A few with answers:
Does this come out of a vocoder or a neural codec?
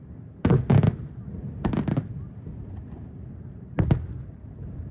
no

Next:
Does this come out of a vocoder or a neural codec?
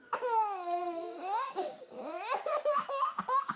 yes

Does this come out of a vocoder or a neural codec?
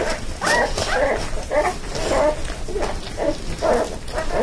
no